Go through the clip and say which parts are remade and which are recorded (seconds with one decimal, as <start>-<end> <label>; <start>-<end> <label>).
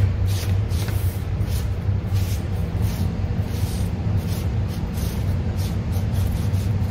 0.0-6.9 remade